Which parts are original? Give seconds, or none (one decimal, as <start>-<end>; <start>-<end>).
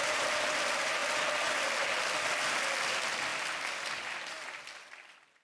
0.0-1.0; 1.5-3.3